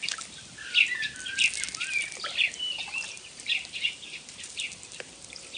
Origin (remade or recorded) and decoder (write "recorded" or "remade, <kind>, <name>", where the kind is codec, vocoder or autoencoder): remade, vocoder, BigVGAN v2